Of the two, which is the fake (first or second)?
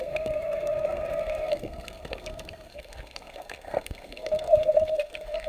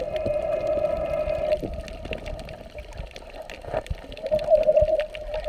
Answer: first